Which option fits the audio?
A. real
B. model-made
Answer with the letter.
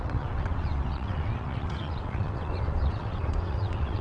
B